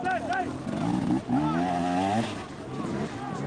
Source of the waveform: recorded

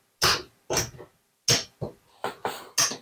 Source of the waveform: recorded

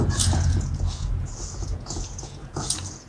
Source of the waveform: remade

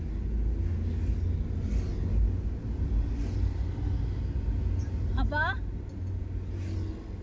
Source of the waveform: recorded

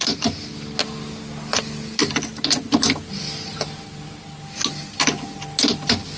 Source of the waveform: recorded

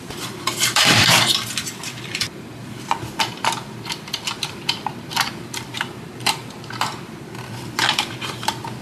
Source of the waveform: remade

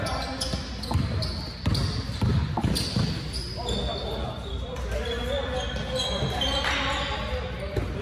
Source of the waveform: recorded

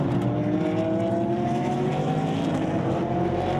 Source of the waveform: recorded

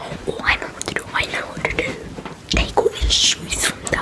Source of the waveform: recorded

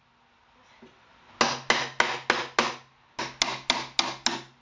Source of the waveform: recorded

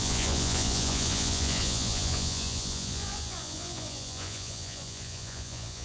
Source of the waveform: remade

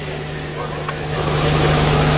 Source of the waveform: recorded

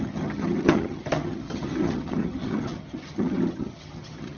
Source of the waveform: remade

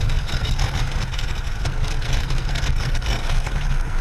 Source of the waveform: remade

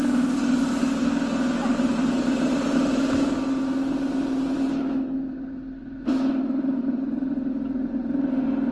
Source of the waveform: recorded